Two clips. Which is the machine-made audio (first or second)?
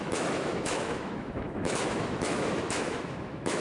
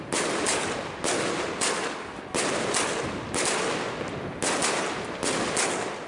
first